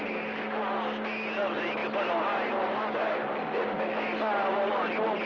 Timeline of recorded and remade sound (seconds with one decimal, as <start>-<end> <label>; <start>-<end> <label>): 0.0-5.3 recorded